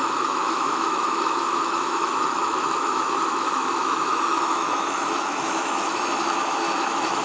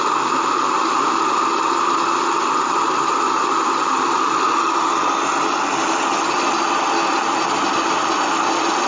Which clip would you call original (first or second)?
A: second